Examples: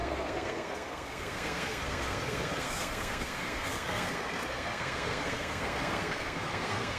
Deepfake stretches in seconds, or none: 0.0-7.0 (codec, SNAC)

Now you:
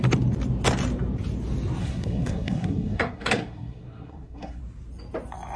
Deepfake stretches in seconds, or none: 1.8-4.6 (codec, SNAC)